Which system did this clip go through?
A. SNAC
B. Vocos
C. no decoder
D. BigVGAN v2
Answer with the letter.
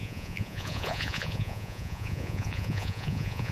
B